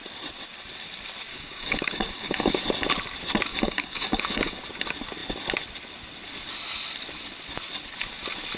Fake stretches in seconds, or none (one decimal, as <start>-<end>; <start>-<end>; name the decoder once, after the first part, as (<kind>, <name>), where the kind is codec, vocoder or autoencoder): 1.3-2.6 (codec, DAC); 3.5-4.6